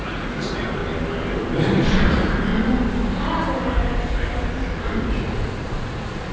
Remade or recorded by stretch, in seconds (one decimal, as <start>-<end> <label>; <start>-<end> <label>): 0.0-0.8 remade; 0.8-2.1 recorded; 2.1-2.5 remade; 2.5-5.1 recorded; 5.1-6.3 remade